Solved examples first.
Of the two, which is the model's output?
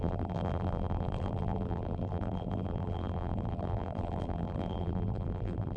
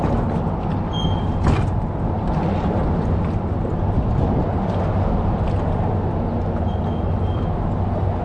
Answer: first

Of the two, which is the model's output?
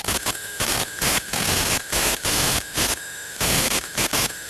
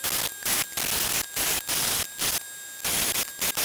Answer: first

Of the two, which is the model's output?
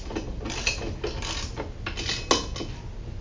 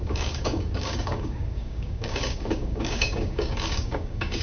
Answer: second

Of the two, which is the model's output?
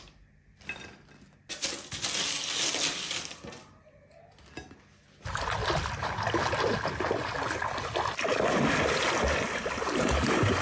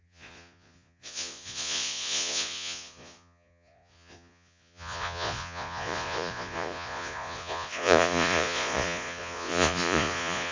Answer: second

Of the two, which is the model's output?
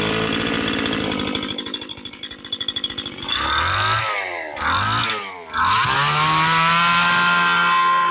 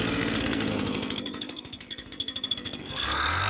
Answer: second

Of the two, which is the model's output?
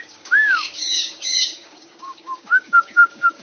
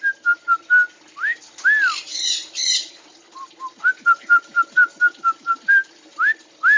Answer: first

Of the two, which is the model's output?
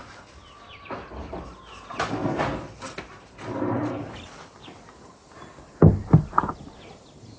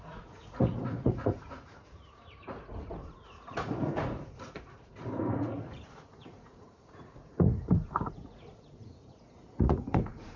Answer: second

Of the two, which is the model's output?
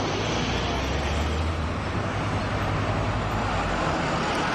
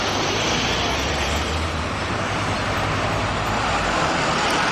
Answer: second